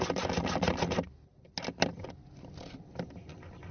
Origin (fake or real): real